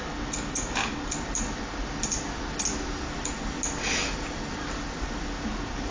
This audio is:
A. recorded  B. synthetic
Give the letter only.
A